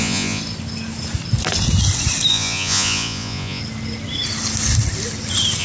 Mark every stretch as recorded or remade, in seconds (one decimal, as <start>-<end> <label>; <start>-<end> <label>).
0.0-0.4 remade; 0.4-2.3 recorded; 2.3-3.6 remade; 3.6-5.6 recorded